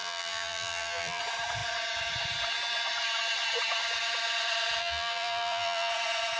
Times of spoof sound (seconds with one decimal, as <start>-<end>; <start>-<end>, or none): 0.0-1.2; 4.8-5.9